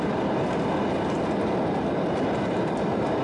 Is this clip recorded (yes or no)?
yes